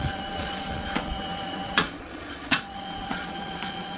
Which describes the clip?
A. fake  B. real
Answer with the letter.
A